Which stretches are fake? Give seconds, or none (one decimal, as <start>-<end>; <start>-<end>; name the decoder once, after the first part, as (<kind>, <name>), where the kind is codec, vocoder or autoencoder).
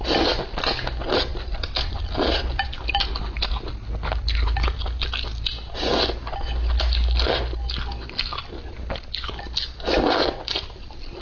none